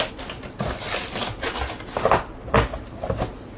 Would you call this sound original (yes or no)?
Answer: yes